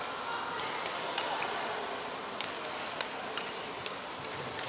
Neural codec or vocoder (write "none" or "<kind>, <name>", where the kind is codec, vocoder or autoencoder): none